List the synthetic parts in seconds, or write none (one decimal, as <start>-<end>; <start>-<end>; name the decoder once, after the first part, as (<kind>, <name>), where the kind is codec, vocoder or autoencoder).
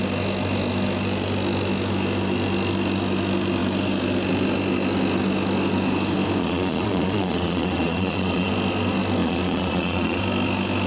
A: 6.4-8.5 (vocoder, Vocos); 9.2-10.2